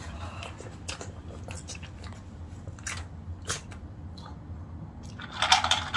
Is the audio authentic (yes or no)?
yes